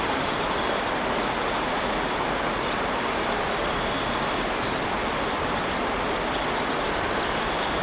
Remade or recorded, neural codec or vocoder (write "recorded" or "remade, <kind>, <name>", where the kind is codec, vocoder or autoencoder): recorded